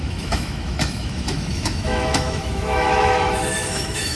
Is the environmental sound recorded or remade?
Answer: remade